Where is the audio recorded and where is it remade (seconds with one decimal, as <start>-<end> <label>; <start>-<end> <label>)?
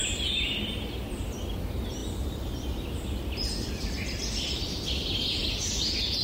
0.0-6.2 recorded